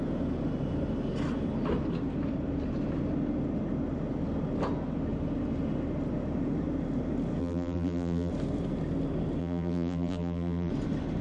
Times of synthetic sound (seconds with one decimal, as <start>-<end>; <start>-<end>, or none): 7.4-8.3; 9.4-10.7